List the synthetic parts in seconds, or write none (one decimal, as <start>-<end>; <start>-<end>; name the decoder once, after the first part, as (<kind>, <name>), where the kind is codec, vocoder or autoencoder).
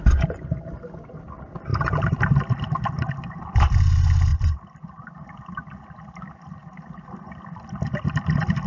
none